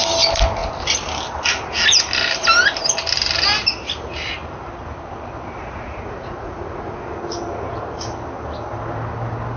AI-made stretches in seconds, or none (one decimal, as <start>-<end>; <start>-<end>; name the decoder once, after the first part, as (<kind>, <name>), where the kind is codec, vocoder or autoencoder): 5.6-7.0 (vocoder, Vocos)